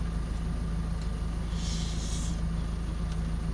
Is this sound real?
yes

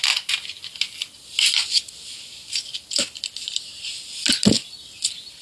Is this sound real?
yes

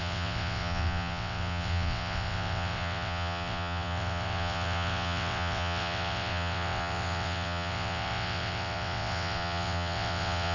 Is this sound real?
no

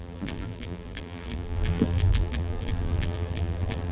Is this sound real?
no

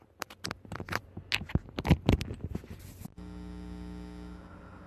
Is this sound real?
yes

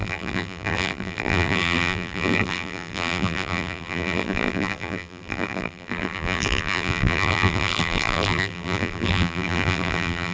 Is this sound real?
no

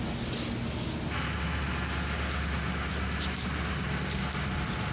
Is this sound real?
yes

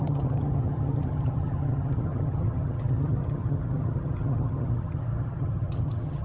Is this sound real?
no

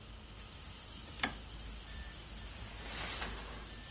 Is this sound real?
yes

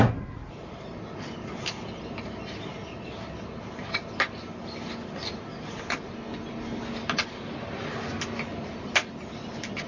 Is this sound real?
yes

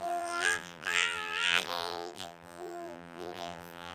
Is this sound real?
no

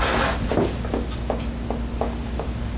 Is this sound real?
yes